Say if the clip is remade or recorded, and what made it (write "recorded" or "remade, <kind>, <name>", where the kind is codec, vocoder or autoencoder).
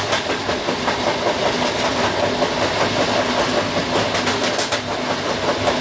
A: recorded